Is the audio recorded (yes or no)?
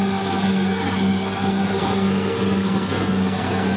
no